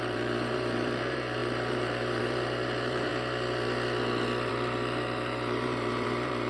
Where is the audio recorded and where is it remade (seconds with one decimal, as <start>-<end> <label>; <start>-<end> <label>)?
0.0-3.1 remade; 3.1-4.5 recorded; 4.5-6.5 remade